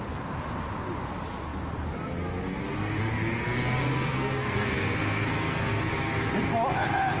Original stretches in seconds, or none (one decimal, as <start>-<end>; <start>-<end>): 0.0-3.8; 5.9-7.2